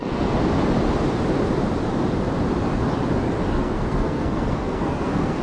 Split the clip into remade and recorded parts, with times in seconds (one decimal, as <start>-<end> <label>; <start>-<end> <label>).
0.0-0.4 remade; 0.4-3.6 recorded; 3.6-5.4 remade